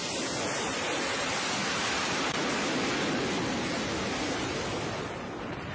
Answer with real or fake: real